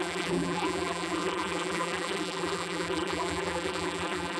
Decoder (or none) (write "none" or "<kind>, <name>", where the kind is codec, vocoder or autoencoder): vocoder, BigVGAN v2